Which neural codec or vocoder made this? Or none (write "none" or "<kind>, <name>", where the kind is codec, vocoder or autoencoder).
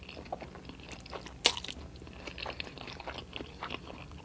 none